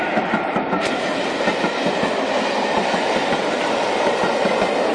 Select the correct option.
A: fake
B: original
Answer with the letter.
B